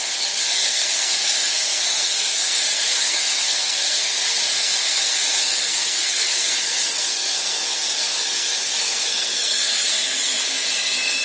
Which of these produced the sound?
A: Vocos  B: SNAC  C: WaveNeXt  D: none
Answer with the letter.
B